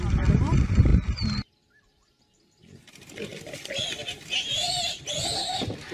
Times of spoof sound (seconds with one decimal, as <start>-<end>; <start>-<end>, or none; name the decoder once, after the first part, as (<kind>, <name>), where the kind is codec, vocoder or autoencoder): none